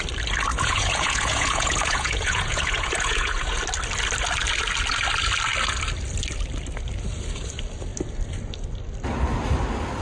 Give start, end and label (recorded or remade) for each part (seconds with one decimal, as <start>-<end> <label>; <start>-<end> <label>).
0.0-0.5 recorded; 0.5-3.6 remade; 3.6-10.0 recorded